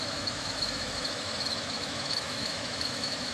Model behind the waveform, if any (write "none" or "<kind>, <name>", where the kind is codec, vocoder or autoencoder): autoencoder, DAC-VAE